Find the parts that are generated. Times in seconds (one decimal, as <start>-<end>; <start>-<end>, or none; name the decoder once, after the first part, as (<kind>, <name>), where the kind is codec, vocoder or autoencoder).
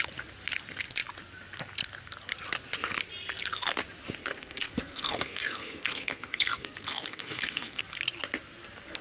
4.2-7.8 (codec, SNAC)